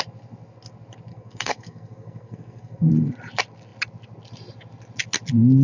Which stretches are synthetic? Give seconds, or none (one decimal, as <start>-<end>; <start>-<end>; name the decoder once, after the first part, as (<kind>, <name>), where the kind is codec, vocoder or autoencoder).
1.1-2.9 (codec, SNAC)